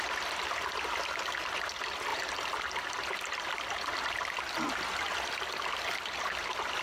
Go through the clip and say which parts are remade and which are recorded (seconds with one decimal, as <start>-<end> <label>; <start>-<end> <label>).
0.0-6.8 recorded